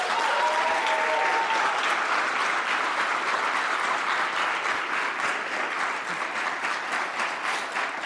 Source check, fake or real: real